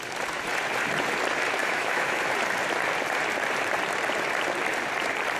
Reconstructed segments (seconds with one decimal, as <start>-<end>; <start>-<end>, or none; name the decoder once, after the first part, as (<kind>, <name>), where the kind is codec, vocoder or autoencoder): 1.6-2.2 (autoencoder, DAC-VAE)